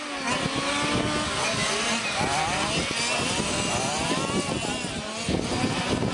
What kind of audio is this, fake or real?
real